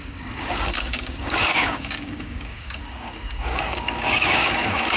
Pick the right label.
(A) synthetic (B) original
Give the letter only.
A